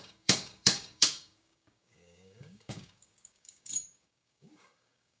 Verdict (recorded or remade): remade